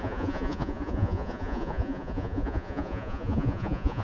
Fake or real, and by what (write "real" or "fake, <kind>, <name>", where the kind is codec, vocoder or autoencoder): fake, vocoder, Vocos